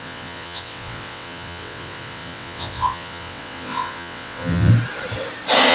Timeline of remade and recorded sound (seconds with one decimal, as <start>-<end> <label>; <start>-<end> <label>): 0.0-4.7 remade; 4.7-5.7 recorded